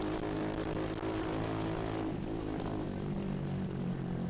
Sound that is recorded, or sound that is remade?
recorded